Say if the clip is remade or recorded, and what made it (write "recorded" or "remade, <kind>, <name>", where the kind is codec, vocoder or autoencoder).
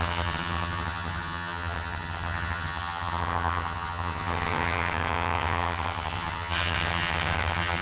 remade, vocoder, HiFi-GAN